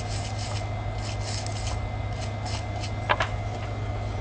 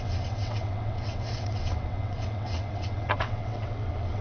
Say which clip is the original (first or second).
first